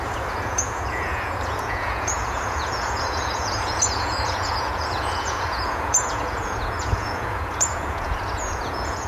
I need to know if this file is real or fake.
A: fake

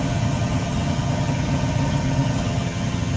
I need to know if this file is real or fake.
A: fake